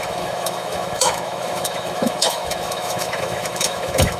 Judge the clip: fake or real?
fake